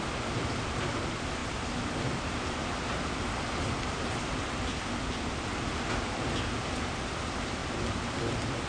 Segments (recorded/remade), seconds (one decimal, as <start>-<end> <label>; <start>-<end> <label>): 0.0-8.7 recorded